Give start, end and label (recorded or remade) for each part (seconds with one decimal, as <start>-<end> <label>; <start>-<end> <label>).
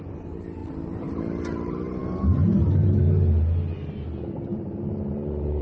0.0-0.6 recorded; 0.6-1.2 remade; 1.2-2.0 recorded; 2.0-3.0 remade; 3.0-4.5 recorded; 4.5-5.6 remade